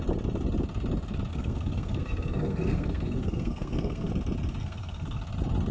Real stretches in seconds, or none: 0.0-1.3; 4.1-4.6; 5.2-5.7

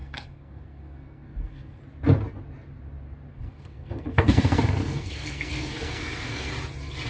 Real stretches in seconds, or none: 1.8-3.3; 6.5-7.1

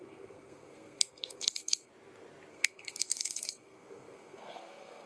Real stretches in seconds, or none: 1.9-2.5

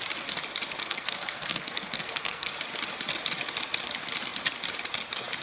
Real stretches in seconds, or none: 0.0-0.8; 2.5-5.4

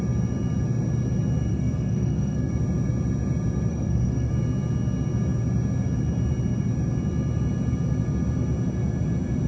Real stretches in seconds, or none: 0.0-1.5; 2.5-3.7; 4.3-9.5

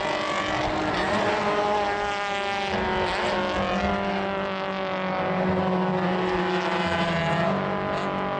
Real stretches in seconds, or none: 0.0-8.4